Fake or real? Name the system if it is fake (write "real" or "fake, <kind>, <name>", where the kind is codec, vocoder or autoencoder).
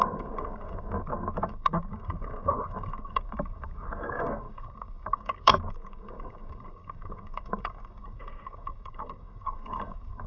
fake, codec, DAC